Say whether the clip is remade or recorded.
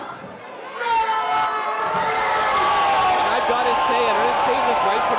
recorded